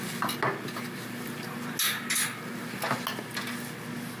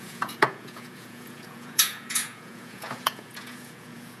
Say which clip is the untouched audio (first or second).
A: first